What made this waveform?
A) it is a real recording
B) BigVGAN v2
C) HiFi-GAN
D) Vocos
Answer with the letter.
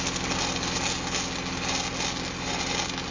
A